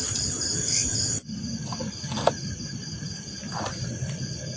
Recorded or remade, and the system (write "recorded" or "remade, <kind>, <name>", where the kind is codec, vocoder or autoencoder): recorded